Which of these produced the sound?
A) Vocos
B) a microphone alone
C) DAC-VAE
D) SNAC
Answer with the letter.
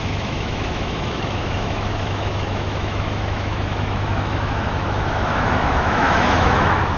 C